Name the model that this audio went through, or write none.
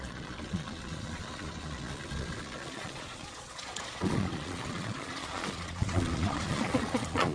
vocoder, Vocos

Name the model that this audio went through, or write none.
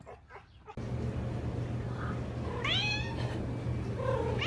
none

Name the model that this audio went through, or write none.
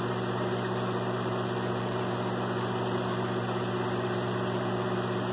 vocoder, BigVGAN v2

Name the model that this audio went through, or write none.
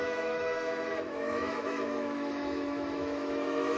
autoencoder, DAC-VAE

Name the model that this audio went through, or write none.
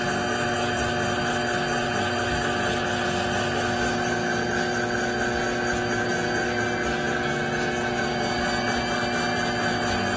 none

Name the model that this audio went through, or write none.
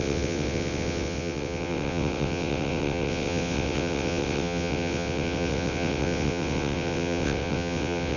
vocoder, WaveNeXt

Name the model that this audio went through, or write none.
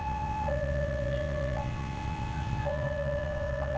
vocoder, WaveNeXt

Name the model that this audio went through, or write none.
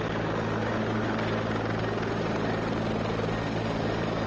none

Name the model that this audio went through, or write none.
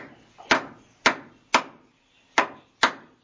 none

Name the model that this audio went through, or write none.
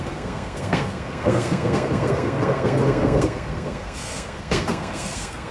codec, SNAC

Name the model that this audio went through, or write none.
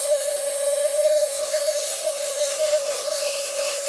codec, SNAC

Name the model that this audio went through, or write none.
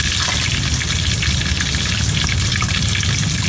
none